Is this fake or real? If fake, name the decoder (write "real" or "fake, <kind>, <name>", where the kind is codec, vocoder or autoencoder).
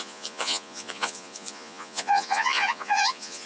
fake, vocoder, Vocos